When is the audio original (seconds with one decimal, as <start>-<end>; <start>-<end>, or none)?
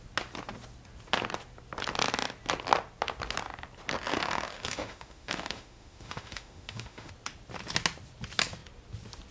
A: 0.0-4.1; 7.1-9.3